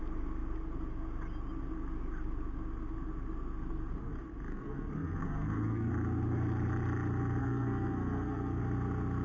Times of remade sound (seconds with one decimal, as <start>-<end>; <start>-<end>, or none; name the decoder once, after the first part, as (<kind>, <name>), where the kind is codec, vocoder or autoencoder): 4.5-5.9 (codec, SNAC); 7.4-8.6